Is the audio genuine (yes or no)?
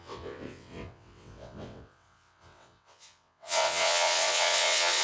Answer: no